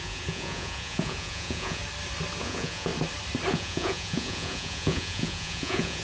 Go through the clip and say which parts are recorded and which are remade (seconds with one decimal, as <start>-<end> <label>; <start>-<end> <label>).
0.0-1.8 remade; 1.8-2.4 recorded; 2.4-2.9 remade; 2.9-3.5 recorded; 3.5-6.0 remade